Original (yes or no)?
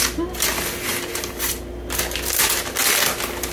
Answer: yes